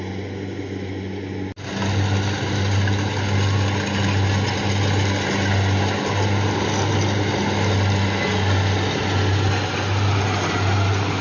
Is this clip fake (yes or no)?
no